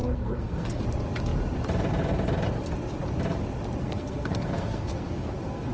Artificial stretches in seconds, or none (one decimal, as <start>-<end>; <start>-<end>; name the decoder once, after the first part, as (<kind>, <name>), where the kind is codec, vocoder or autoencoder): 0.0-0.8 (codec, SNAC); 3.8-5.7